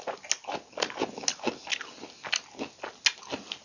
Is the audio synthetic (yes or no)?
no